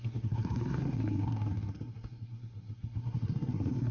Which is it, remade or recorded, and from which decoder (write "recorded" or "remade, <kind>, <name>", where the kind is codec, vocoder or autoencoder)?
remade, codec, SNAC